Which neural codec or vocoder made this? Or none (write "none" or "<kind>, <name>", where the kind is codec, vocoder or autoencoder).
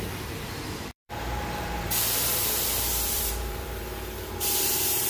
vocoder, BigVGAN v2